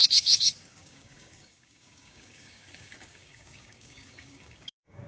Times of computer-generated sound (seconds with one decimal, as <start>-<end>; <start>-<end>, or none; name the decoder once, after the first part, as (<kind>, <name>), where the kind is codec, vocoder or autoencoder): 0.0-5.1 (codec, DAC)